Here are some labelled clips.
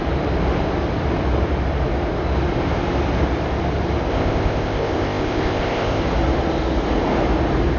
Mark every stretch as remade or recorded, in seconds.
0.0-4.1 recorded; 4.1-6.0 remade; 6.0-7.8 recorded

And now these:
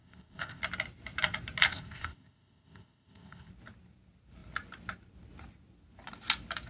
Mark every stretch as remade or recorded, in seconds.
0.0-0.6 remade; 0.6-1.7 recorded; 1.7-3.5 remade; 3.5-6.7 recorded

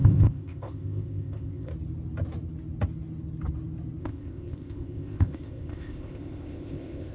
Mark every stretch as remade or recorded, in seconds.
0.0-1.7 remade; 1.7-4.0 recorded; 4.0-7.1 remade

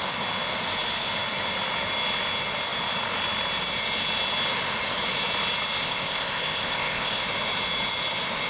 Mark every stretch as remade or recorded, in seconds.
0.0-5.8 recorded; 5.8-7.2 remade; 7.2-8.5 recorded

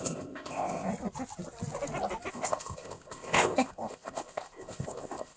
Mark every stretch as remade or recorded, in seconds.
0.0-0.9 remade; 0.9-2.3 recorded; 2.3-5.4 remade

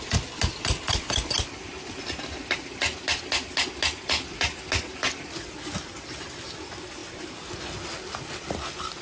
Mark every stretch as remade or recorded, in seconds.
0.0-9.0 recorded

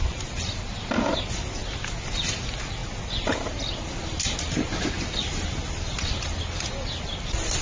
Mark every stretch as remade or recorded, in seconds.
0.0-7.6 recorded

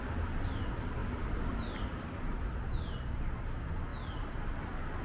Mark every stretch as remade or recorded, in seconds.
0.0-5.0 recorded